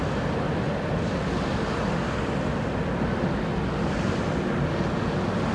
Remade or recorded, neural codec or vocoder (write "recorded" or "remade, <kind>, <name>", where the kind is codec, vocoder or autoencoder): recorded